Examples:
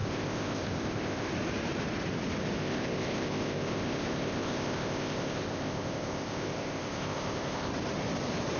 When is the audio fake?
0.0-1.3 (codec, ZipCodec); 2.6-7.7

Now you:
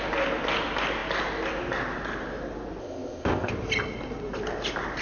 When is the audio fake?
2.8-3.5 (codec, ZipCodec)

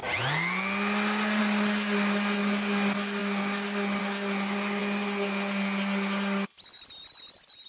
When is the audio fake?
none

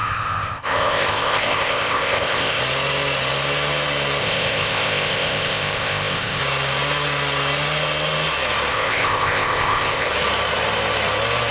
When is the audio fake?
0.0-2.6 (codec, ZipCodec); 4.2-6.4; 8.7-10.1